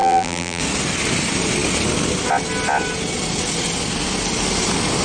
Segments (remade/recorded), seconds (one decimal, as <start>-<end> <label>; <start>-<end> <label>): 0.0-0.6 remade; 0.6-5.0 recorded